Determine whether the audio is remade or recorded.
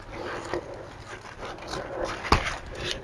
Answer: recorded